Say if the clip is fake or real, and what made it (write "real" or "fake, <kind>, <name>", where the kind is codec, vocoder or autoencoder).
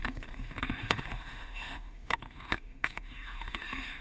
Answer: fake, autoencoder, DAC-VAE